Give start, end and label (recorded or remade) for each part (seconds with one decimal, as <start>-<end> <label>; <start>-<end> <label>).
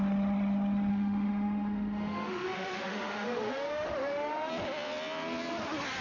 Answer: 0.0-0.9 recorded; 0.9-4.5 remade; 4.5-6.0 recorded